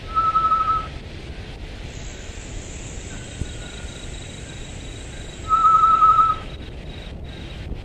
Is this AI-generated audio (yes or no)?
no